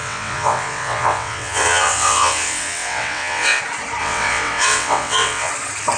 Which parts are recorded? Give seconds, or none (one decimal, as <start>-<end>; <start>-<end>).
3.6-4.0; 5.5-6.0

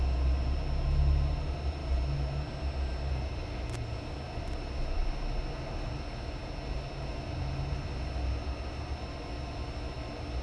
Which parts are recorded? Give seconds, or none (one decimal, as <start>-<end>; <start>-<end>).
0.0-10.4